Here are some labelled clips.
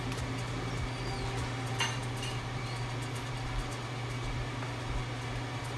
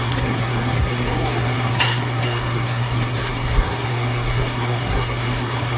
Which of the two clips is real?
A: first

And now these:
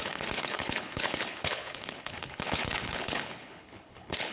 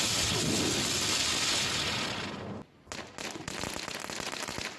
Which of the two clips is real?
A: second